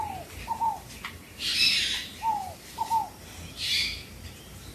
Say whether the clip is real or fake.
fake